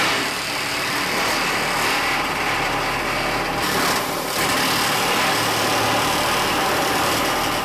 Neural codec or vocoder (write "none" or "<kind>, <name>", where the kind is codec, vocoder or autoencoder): none